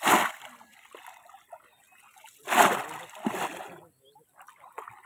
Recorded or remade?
recorded